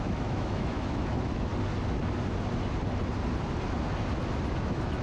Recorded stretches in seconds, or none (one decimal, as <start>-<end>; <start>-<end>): 1.5-4.5